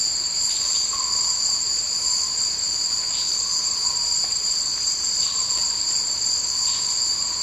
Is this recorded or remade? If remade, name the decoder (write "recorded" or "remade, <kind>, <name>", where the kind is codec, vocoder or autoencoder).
remade, vocoder, BigVGAN v2